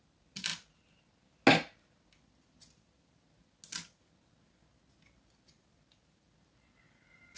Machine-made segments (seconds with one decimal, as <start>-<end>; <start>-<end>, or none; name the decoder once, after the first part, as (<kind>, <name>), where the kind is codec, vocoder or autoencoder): none